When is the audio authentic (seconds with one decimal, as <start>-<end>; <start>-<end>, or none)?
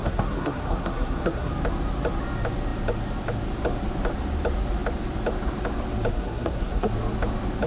1.5-6.1; 6.9-7.7